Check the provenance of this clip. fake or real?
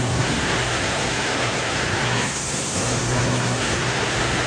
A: fake